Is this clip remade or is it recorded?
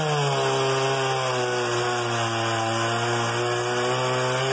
recorded